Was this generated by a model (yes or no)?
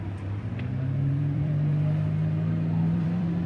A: yes